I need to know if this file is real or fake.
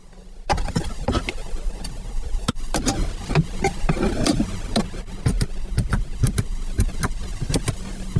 real